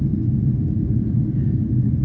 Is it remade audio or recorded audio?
recorded